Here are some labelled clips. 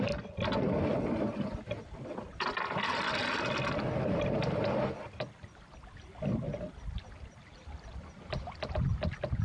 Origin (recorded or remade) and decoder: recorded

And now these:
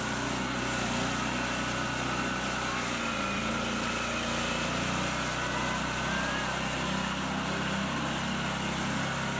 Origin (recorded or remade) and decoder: recorded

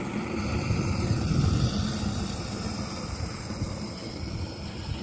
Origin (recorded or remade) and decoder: recorded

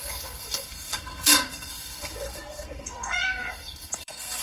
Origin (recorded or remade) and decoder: remade, codec, SNAC